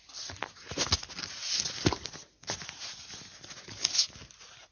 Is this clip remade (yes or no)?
no